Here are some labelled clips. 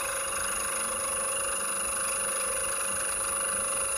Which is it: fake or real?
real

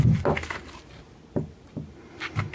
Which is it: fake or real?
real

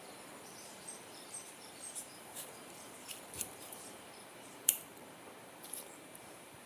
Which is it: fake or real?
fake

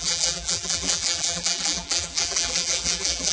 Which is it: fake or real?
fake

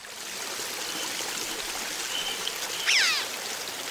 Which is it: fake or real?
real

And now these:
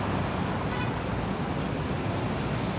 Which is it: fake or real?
real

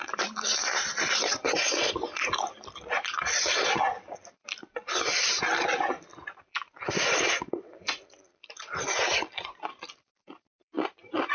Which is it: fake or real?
fake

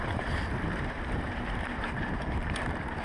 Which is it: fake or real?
fake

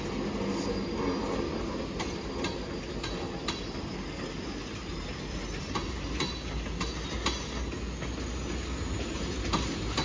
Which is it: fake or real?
real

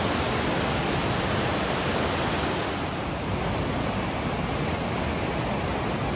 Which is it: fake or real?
real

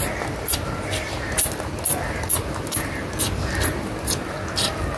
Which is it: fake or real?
real